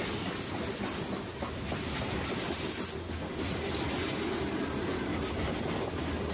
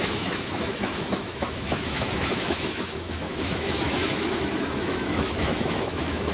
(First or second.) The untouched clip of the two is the first